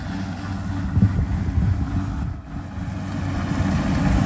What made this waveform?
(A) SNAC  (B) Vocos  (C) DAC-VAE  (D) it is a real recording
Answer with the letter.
D